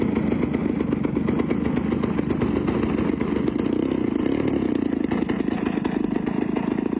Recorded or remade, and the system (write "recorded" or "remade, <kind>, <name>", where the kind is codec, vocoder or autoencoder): recorded